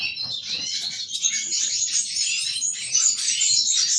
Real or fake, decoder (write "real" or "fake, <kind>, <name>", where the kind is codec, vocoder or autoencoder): fake, vocoder, BigVGAN v2